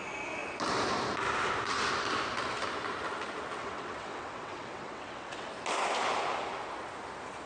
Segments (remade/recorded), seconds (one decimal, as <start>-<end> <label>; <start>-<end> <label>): 0.0-3.6 recorded; 3.6-5.5 remade; 5.5-7.5 recorded